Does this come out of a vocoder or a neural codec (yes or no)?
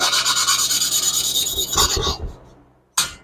no